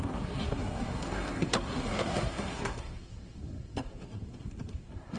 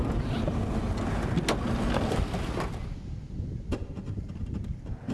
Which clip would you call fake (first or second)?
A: first